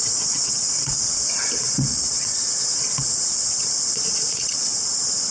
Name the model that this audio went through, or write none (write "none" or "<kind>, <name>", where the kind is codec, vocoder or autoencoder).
vocoder, WaveNeXt